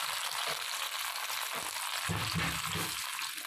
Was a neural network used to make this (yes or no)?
no